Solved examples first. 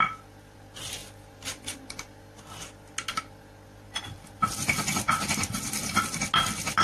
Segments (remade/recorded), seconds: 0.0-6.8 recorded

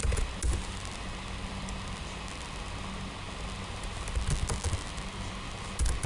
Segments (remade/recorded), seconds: 0.0-6.1 recorded

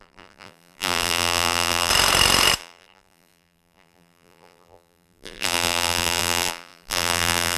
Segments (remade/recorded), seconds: 0.0-1.9 remade; 1.9-2.6 recorded; 2.6-7.6 remade

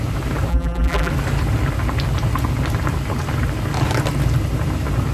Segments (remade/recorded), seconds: 0.0-0.5 recorded; 0.5-1.1 remade; 1.1-5.1 recorded

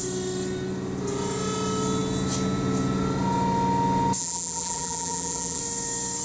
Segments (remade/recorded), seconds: 0.0-4.2 recorded; 4.2-5.6 remade; 5.6-6.2 recorded

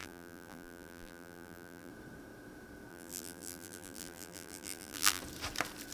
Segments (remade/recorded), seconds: 0.0-1.9 remade; 1.9-2.9 recorded; 2.9-5.2 remade; 5.2-5.9 recorded

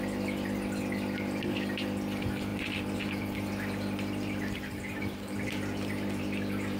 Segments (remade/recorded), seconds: 0.0-2.5 recorded; 2.5-6.8 remade